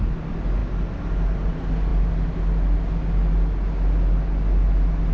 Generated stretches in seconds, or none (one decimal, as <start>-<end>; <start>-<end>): none